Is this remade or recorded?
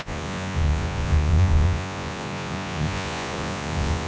remade